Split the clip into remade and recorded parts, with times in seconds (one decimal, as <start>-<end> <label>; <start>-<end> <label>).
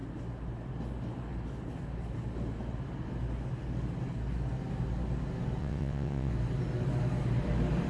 0.0-5.6 recorded; 5.6-6.3 remade; 6.3-7.9 recorded